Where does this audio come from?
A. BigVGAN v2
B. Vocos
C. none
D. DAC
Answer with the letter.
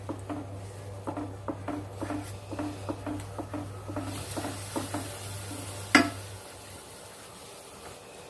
C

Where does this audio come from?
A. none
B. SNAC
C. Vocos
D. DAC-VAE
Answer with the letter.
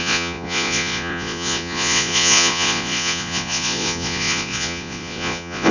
C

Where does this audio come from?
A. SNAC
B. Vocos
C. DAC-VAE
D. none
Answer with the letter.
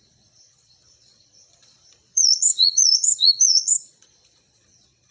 B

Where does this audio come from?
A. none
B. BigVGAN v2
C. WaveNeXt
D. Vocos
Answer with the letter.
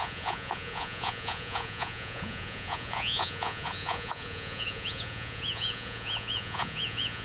D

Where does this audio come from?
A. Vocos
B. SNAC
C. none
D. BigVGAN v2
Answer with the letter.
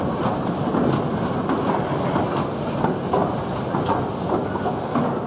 C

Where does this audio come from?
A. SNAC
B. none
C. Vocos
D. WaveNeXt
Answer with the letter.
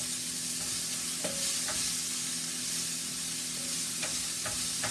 B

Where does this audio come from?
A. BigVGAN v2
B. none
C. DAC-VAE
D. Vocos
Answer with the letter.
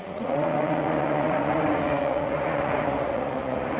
D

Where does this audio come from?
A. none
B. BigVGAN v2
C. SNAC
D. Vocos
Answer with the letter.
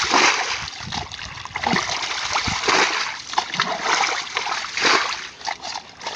A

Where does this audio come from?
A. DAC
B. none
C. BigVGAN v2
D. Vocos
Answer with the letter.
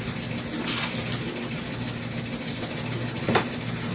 B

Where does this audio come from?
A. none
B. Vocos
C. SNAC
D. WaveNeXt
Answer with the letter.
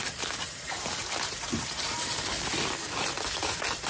A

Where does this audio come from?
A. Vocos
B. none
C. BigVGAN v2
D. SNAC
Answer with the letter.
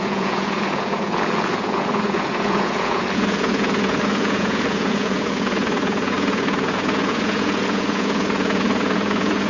A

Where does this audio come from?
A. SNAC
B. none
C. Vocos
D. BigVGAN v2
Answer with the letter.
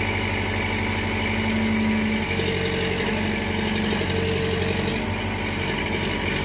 B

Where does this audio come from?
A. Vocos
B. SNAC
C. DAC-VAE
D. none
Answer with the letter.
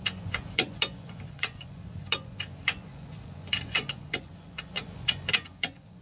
A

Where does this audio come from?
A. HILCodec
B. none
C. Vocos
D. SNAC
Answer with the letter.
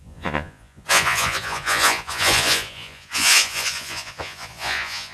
C